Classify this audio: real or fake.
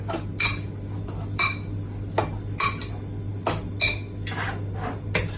real